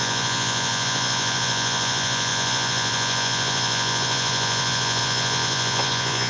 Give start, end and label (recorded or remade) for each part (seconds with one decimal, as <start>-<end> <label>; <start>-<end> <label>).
0.0-6.3 remade